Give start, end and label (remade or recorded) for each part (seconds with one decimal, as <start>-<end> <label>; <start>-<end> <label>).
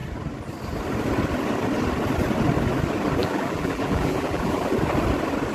0.0-3.2 recorded; 3.2-4.7 remade; 4.7-5.5 recorded